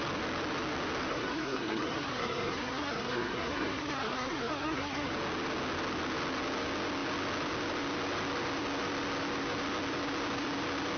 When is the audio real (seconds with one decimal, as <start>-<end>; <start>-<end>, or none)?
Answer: 0.0-1.1; 5.1-11.0